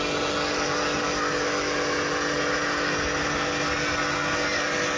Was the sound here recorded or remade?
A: recorded